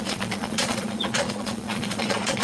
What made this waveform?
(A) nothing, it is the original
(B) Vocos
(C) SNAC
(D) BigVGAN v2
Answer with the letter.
B